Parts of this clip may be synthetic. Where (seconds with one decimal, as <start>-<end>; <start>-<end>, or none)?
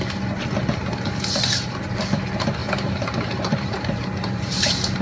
2.6-5.0